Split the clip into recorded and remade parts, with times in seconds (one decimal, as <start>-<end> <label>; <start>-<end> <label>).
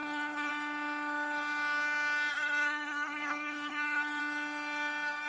0.0-0.5 remade; 0.5-2.3 recorded; 2.3-4.2 remade; 4.2-5.3 recorded